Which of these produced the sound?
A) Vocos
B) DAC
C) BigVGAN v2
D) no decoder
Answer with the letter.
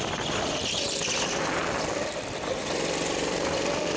C